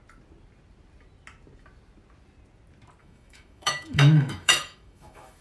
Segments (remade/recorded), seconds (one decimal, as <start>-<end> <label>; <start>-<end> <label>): 0.0-3.0 recorded; 3.0-5.4 remade